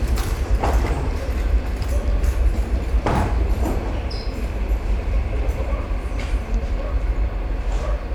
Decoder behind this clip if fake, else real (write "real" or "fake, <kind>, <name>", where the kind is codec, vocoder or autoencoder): fake, vocoder, BigVGAN v2